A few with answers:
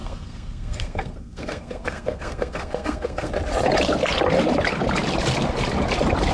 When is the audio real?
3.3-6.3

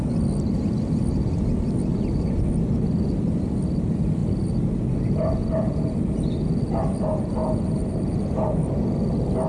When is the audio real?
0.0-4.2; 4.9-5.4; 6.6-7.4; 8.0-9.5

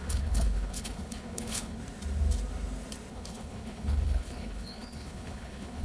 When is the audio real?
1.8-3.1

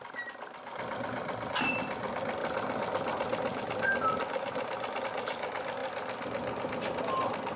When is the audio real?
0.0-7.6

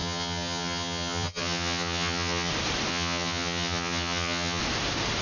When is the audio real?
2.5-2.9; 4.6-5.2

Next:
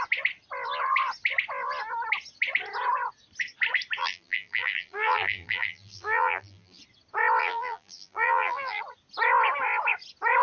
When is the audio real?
0.0-4.0; 6.8-7.4; 8.8-10.4

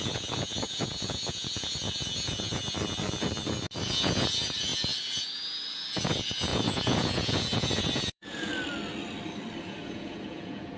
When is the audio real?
2.6-3.8; 8.5-9.6